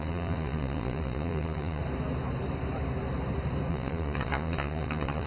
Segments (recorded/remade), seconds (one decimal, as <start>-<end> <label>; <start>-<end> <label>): 0.0-1.8 remade; 1.8-3.7 recorded; 3.7-5.3 remade